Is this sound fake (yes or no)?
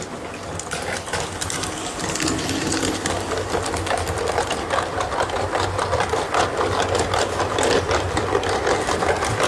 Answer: no